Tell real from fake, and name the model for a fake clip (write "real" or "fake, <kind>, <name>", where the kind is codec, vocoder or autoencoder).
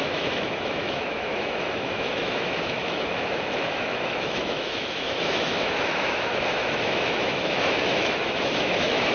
fake, autoencoder, DAC-VAE